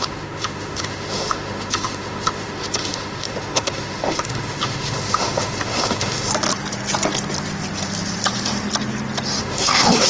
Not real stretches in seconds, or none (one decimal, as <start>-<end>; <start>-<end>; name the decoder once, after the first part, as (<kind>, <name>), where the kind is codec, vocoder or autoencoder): 0.0-6.3 (autoencoder, DAC-VAE); 9.4-10.1